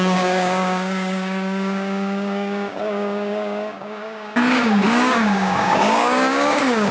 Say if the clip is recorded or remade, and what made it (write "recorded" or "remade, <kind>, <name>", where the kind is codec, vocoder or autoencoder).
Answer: remade, codec, DAC